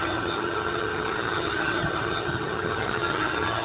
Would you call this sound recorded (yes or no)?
no